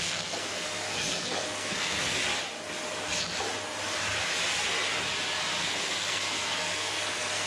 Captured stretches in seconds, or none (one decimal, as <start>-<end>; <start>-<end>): 2.2-5.6